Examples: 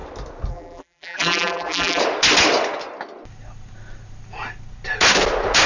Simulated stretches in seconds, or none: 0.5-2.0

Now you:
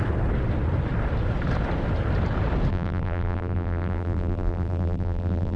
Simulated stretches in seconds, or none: 2.7-5.6

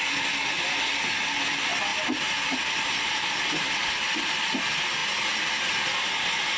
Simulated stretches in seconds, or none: 1.9-3.7

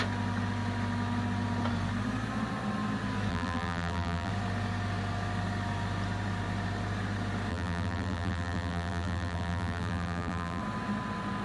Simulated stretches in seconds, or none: 3.3-4.3; 7.5-10.6

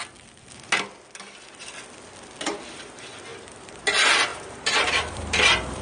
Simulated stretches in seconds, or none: 3.3-3.8; 4.3-5.8